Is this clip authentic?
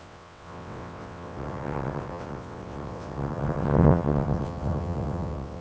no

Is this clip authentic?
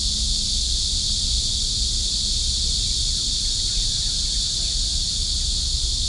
yes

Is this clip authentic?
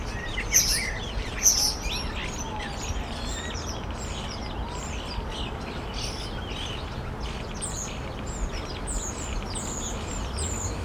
yes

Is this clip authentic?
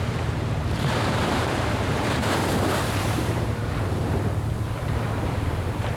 no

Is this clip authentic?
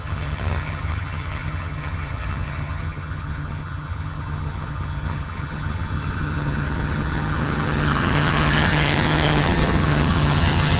no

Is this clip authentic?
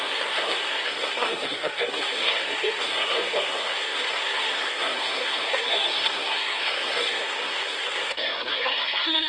no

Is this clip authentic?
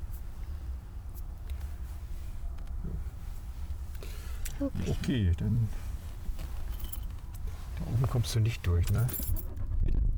no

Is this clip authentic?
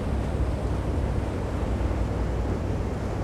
no